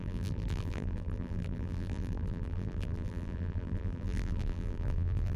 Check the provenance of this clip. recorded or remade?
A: remade